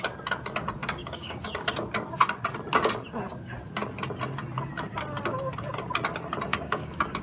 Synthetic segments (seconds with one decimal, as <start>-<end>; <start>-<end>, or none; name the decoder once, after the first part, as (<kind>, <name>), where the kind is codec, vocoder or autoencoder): 0.8-1.7 (codec, DAC); 6.5-7.2